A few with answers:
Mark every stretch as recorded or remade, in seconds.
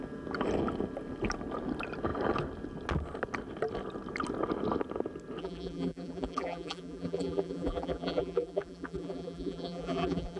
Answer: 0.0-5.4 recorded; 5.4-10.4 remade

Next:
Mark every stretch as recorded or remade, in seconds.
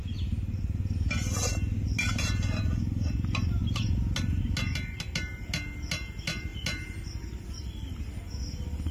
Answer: 0.0-8.9 recorded